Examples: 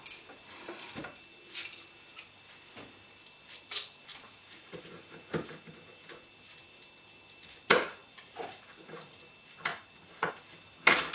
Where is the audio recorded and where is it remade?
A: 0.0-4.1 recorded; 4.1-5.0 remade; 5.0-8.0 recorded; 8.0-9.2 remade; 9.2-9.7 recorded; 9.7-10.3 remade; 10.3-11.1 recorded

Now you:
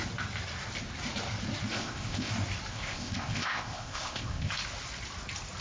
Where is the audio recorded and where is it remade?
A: 0.0-1.7 recorded; 1.7-2.3 remade; 2.3-2.7 recorded; 2.7-4.5 remade; 4.5-5.6 recorded